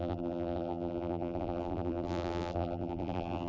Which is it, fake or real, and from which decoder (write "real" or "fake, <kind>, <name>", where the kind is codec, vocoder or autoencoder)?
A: fake, vocoder, BigVGAN v2